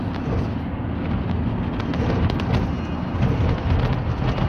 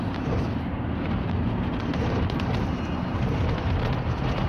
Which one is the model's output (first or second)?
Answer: second